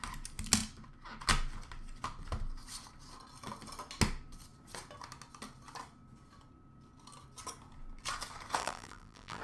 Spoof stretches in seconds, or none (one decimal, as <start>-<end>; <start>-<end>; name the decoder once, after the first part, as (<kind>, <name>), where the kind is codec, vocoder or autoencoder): 8.6-9.4 (vocoder, BigVGAN v2)

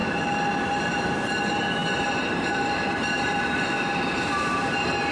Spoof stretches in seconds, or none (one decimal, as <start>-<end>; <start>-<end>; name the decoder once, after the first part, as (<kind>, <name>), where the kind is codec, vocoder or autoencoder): 0.6-5.1 (vocoder, BigVGAN v2)

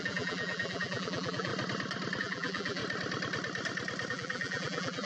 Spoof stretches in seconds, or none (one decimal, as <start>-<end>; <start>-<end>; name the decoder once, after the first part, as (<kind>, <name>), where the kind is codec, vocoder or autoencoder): 0.0-1.5 (vocoder, BigVGAN v2); 2.2-2.8; 4.1-5.1

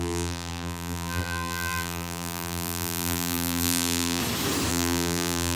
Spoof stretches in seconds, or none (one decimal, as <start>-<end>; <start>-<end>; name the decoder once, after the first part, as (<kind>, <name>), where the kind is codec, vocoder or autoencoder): 0.0-4.2 (vocoder, BigVGAN v2); 4.7-5.5

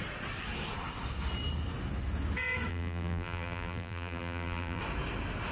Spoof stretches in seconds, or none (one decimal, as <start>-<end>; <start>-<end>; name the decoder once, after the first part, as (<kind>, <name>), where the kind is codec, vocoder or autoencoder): 2.7-4.8 (vocoder, BigVGAN v2)

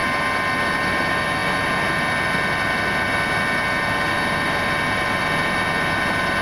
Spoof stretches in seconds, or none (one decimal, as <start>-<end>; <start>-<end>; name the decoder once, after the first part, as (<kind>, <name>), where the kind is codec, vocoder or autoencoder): none